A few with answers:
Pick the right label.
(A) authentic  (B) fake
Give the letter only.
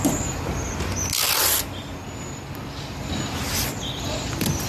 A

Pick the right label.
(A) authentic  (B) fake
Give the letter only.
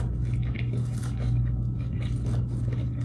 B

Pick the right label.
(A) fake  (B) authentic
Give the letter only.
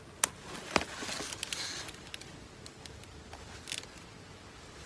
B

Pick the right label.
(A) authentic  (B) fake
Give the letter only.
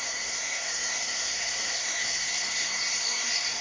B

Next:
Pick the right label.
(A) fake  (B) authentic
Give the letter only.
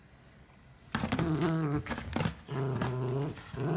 B